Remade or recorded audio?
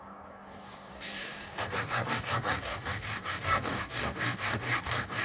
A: remade